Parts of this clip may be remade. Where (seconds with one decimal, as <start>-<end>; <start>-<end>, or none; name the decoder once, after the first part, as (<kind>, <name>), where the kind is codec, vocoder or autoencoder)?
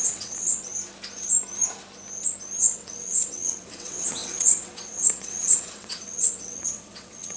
0.0-0.7 (vocoder, WaveNeXt); 2.6-7.4